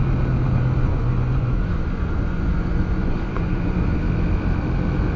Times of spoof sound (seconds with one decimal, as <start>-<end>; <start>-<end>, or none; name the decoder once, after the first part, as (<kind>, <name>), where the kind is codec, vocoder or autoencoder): 0.9-4.0 (vocoder, Vocos)